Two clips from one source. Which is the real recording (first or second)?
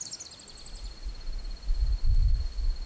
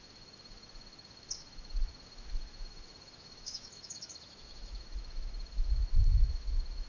first